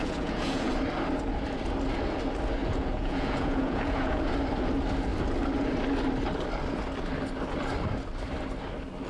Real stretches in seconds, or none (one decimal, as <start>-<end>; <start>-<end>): 0.7-2.6; 4.2-9.1